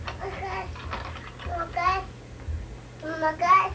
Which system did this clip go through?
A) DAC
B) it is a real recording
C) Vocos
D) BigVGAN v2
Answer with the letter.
B